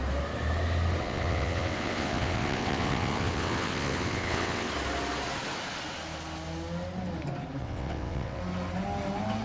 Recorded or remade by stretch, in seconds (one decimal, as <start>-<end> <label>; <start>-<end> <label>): 0.0-1.0 recorded; 1.0-4.7 remade; 4.7-7.6 recorded; 7.6-8.4 remade; 8.4-9.4 recorded

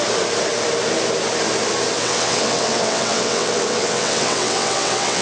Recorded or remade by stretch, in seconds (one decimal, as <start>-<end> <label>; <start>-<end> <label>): 0.0-2.0 recorded; 2.0-5.2 remade

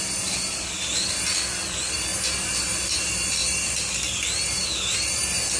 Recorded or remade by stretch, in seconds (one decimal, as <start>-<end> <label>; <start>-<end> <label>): 0.0-5.6 recorded